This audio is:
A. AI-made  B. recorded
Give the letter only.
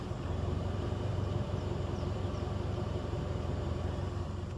A